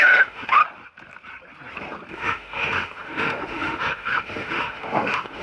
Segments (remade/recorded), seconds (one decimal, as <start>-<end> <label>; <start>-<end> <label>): 0.0-0.6 remade; 0.6-2.1 recorded; 2.1-5.4 remade